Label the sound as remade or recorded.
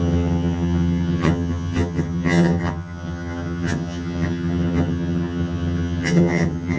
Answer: remade